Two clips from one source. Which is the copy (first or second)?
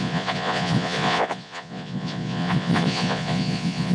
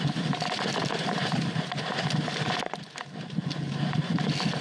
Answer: first